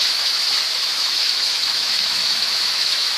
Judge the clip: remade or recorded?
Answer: remade